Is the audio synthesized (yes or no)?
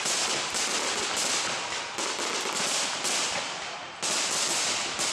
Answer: no